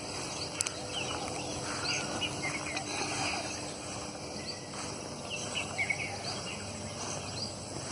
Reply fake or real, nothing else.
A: real